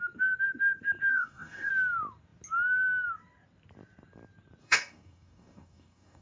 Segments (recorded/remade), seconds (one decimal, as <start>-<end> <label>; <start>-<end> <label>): 0.0-1.1 recorded; 1.1-1.7 remade; 1.7-4.6 recorded; 4.6-6.2 remade